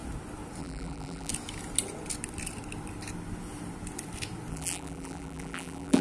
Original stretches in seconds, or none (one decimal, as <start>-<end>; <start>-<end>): 0.0-0.6; 1.3-4.5